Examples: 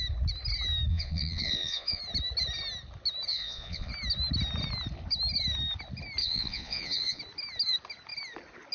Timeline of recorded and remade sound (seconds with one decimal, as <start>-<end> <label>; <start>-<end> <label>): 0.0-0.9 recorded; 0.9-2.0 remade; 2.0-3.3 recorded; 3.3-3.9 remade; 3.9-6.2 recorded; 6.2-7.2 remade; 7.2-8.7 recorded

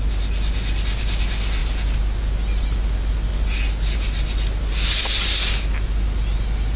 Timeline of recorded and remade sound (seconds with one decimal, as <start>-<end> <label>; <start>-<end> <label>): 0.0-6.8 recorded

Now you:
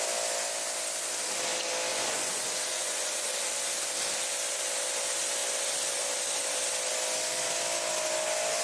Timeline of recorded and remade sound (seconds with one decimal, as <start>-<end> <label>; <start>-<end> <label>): 0.0-1.9 recorded; 1.9-3.3 remade; 3.3-8.6 recorded

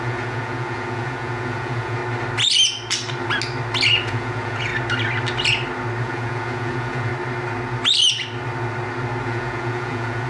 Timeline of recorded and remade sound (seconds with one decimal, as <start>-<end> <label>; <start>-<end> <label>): 0.0-2.0 remade; 2.0-4.0 recorded; 4.0-4.7 remade; 4.7-6.0 recorded; 6.0-7.1 remade; 7.1-9.2 recorded; 9.2-10.3 remade

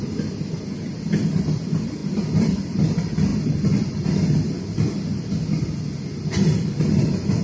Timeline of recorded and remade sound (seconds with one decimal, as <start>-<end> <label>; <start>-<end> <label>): 0.0-7.4 recorded

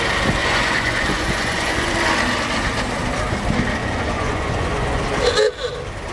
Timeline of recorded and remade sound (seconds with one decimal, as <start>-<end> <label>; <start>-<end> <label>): 0.0-0.4 recorded; 0.4-1.9 remade; 1.9-3.8 recorded; 3.8-5.0 remade; 5.0-6.1 recorded